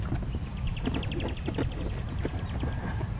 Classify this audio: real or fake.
real